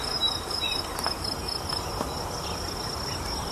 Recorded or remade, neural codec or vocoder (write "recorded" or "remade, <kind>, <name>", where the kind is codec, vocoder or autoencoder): recorded